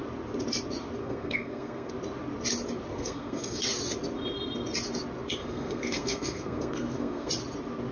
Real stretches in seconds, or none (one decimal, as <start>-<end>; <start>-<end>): 0.0-1.0; 1.9-2.9; 3.6-5.4; 7.3-7.9